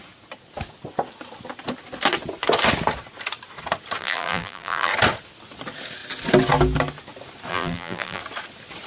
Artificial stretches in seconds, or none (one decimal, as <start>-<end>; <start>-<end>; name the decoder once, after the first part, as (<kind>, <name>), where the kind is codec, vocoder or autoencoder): 4.0-4.9 (vocoder, BigVGAN v2); 7.5-8.2